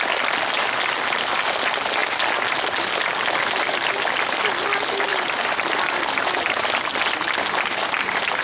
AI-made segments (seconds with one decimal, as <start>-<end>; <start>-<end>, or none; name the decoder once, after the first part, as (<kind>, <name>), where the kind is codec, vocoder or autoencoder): 5.1-6.8 (vocoder, BigVGAN v2)